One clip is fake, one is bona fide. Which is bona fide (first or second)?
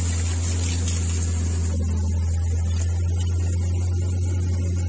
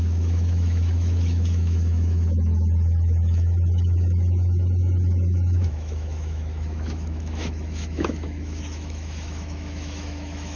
first